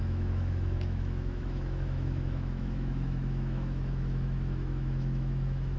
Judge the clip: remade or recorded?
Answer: remade